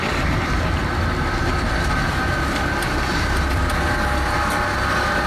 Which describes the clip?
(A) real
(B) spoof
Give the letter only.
A